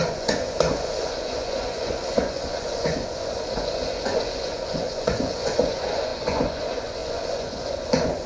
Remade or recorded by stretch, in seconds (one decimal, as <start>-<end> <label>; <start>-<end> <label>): 0.0-8.3 remade